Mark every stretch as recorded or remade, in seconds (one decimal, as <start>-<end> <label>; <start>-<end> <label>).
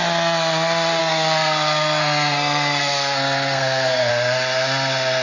0.0-1.0 recorded; 1.0-4.1 remade; 4.1-5.2 recorded